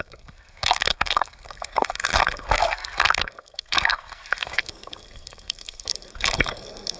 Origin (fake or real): fake